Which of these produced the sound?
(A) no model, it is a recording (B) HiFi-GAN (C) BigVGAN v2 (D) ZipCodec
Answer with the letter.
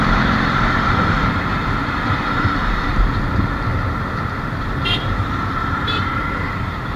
C